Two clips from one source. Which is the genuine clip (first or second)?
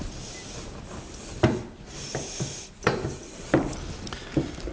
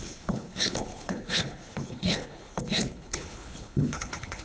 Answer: first